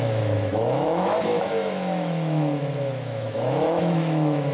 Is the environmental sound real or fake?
fake